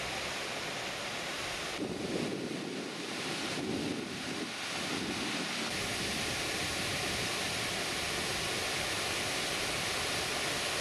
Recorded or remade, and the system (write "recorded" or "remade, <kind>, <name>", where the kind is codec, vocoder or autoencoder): recorded